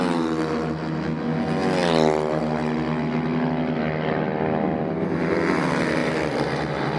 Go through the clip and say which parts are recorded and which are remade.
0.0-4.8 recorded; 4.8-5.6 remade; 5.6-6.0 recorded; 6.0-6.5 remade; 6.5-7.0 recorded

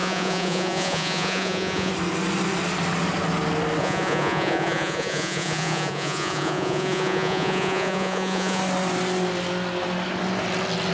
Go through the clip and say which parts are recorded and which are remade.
0.0-1.9 remade; 1.9-3.8 recorded; 3.8-8.6 remade; 8.6-10.9 recorded